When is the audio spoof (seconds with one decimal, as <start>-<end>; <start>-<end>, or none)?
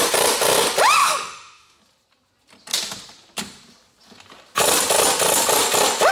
1.0-1.8